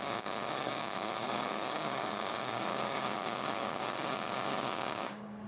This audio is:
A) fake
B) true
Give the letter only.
A